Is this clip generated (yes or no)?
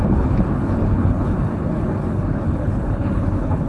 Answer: yes